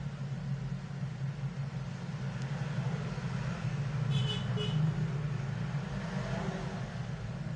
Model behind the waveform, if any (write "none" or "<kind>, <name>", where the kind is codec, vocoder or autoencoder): none